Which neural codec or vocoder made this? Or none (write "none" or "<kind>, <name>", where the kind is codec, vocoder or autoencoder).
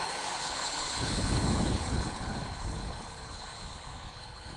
codec, HILCodec